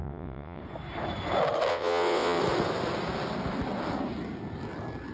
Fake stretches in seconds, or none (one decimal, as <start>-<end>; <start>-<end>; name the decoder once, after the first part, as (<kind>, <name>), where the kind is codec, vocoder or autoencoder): 0.0-0.6 (vocoder, WaveNeXt); 1.7-2.4